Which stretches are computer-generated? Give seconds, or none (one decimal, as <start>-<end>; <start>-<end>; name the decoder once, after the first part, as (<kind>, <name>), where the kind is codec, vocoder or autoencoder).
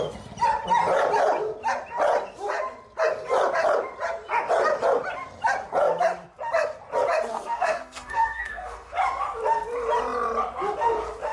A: 7.3-8.9 (codec, SNAC)